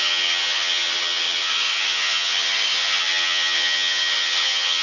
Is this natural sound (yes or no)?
no